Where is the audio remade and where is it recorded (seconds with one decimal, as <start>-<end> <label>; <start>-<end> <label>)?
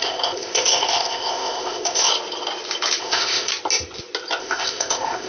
0.0-2.1 remade; 2.1-3.0 recorded; 3.0-3.5 remade; 3.5-4.4 recorded; 4.4-5.3 remade